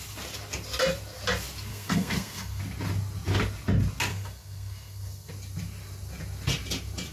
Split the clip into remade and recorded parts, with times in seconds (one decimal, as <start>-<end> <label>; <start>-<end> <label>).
0.0-1.7 recorded; 1.7-2.6 remade; 2.6-4.1 recorded; 4.1-5.3 remade; 5.3-7.1 recorded